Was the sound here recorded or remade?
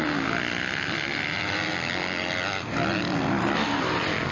recorded